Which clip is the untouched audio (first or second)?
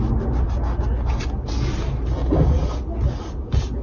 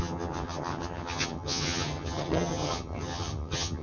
first